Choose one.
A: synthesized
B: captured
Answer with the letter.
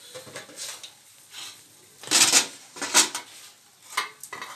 B